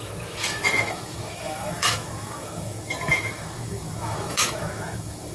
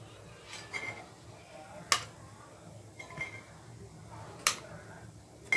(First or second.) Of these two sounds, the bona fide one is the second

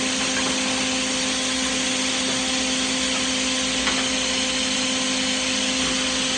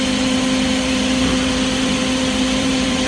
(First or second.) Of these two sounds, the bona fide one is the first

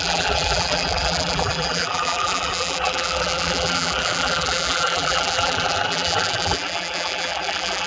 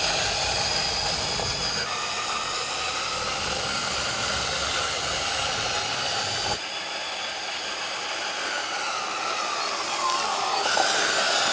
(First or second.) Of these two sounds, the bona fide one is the second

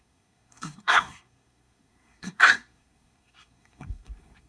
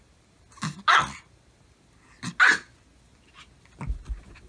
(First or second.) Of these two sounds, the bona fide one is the second